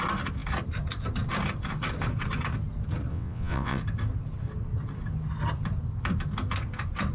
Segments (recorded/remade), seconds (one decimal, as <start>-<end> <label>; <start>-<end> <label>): 0.0-3.1 recorded; 3.1-3.8 remade; 3.8-7.1 recorded